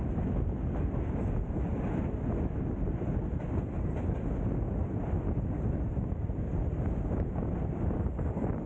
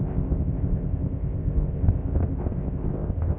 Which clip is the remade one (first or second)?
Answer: second